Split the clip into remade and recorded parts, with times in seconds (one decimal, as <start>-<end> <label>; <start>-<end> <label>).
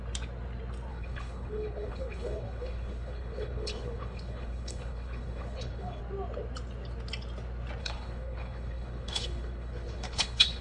0.0-0.9 recorded; 0.9-6.0 remade; 6.0-7.8 recorded; 7.8-10.6 remade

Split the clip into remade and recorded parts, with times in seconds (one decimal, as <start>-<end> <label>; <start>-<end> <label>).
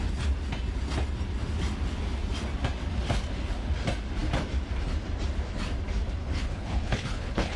0.0-6.2 recorded; 6.2-7.6 remade